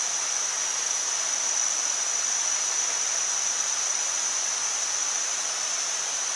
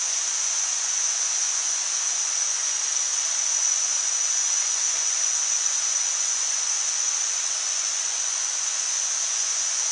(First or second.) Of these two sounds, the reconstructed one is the second